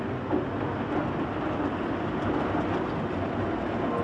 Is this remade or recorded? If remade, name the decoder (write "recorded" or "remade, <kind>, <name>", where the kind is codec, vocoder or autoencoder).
recorded